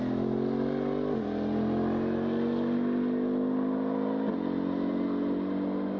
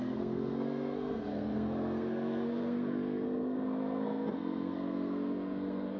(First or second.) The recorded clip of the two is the first